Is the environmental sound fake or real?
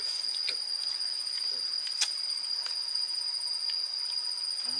real